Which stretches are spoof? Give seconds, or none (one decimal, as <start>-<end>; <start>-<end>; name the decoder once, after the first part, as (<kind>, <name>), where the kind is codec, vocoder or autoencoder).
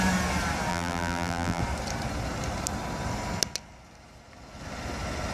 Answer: 0.7-1.6 (vocoder, BigVGAN v2)